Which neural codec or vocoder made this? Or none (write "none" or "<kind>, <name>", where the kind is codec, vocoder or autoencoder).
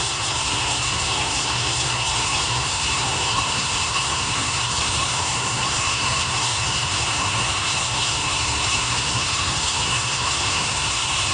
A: codec, SNAC